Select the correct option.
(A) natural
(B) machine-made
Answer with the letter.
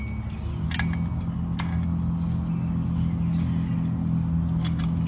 A